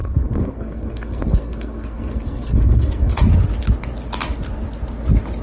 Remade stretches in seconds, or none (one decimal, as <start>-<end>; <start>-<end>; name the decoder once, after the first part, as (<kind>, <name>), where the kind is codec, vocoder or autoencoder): 0.0-3.2 (codec, SNAC)